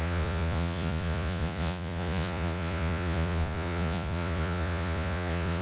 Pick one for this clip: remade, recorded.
remade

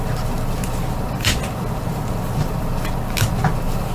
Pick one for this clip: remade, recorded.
recorded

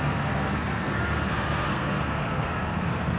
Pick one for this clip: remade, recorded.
remade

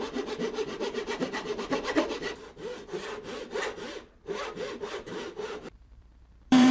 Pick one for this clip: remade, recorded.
remade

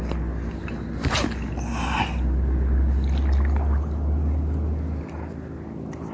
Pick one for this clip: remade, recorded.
recorded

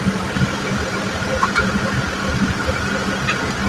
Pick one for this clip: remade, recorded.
remade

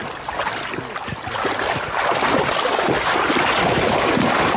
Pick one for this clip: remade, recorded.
recorded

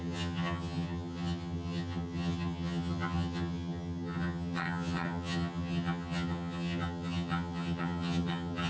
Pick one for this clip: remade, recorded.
remade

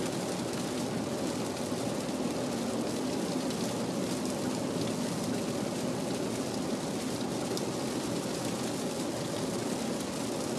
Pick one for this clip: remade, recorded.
recorded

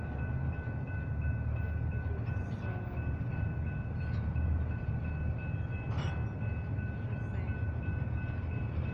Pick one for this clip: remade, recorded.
recorded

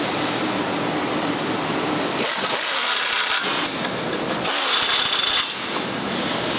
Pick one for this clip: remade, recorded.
recorded